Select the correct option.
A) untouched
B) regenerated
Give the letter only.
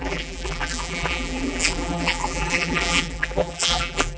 B